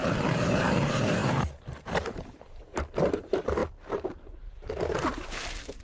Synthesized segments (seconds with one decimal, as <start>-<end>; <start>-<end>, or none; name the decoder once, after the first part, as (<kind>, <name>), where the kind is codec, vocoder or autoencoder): 0.0-5.8 (vocoder, BigVGAN v2)